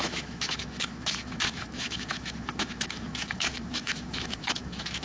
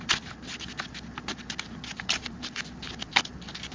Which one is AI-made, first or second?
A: first